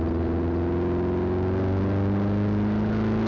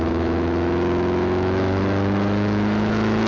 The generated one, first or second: second